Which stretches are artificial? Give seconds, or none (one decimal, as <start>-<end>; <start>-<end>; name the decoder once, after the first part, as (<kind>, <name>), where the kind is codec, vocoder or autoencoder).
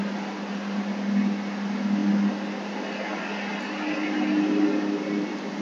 none